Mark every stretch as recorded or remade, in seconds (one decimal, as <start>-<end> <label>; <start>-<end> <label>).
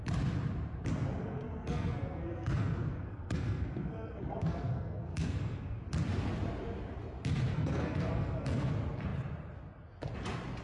0.0-1.2 recorded; 1.2-5.8 remade; 5.8-7.5 recorded; 7.5-8.7 remade; 8.7-10.6 recorded